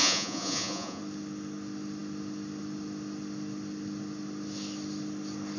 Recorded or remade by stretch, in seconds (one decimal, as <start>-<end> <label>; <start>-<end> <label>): 0.0-1.0 remade; 1.0-5.6 recorded